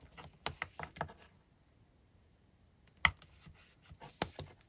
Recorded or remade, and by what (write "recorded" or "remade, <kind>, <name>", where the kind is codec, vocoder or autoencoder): recorded